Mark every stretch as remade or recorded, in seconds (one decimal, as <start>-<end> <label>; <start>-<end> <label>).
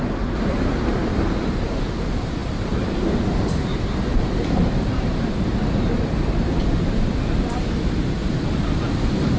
0.0-9.4 remade